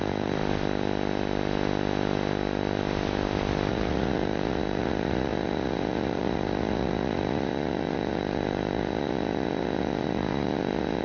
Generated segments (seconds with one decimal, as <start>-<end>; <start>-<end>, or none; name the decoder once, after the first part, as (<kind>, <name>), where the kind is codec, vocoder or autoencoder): 0.0-0.4 (vocoder, Vocos); 3.7-11.0